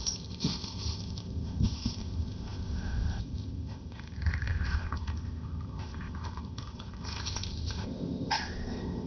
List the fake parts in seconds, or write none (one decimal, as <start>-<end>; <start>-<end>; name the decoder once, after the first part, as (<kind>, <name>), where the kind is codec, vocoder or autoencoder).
0.0-9.1 (codec, ZipCodec)